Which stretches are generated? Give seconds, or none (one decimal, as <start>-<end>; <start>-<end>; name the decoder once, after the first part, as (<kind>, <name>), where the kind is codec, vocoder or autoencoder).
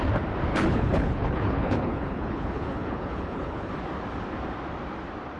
0.5-3.7 (codec, HILCodec)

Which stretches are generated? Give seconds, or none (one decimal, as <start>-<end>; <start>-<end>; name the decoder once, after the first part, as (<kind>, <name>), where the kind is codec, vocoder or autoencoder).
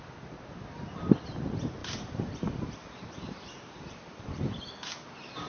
1.8-4.7 (vocoder, BigVGAN v2)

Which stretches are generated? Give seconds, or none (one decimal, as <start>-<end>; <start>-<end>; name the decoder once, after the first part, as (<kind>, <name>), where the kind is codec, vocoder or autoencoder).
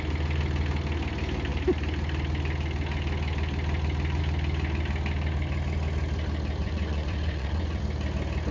6.6-7.8 (vocoder, Vocos)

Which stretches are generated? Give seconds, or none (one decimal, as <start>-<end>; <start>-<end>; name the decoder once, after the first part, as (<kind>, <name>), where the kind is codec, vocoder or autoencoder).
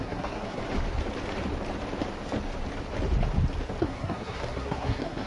0.0-0.6 (codec, SNAC); 3.8-5.3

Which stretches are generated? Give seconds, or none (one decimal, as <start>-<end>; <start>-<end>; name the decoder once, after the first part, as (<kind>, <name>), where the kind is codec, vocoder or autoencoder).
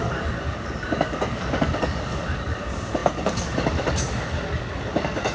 0.0-5.3 (codec, DAC)